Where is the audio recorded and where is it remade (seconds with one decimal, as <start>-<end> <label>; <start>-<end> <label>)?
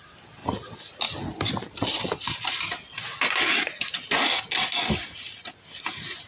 0.0-6.3 recorded